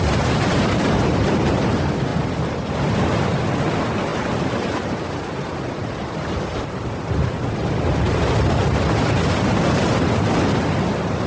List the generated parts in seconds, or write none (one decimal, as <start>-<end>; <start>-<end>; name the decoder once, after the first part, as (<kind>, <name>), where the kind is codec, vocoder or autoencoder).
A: none

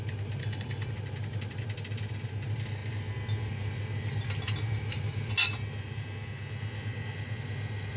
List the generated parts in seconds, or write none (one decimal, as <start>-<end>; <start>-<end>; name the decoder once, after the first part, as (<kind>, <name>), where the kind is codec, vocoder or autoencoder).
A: 0.4-0.9 (codec, DAC)

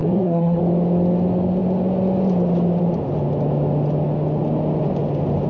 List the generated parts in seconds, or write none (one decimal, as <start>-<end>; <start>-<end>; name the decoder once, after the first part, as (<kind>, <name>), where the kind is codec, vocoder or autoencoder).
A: 0.0-0.6 (codec, SNAC)

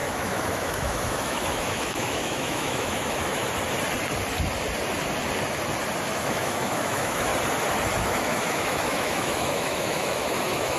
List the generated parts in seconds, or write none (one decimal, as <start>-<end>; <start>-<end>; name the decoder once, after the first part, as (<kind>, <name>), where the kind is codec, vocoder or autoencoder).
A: 0.0-3.4 (autoencoder, DAC-VAE); 6.1-7.3; 8.1-10.8